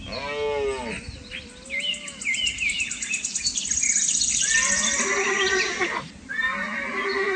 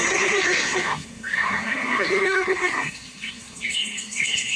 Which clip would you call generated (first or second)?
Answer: second